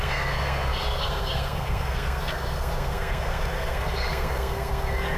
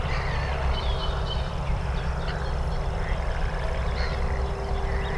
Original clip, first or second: second